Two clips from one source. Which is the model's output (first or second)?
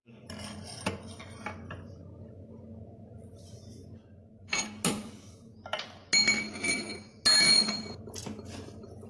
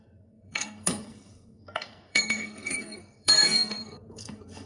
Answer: second